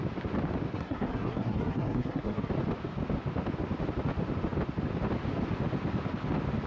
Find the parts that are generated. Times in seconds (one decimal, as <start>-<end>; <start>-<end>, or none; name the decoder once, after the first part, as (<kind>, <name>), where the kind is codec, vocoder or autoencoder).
0.7-2.5 (codec, SNAC)